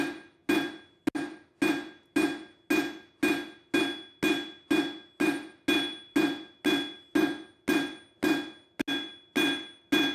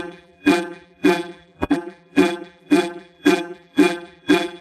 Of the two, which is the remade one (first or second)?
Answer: second